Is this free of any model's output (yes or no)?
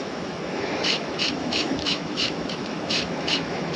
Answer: no